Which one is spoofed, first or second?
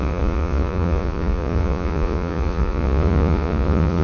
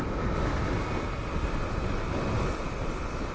first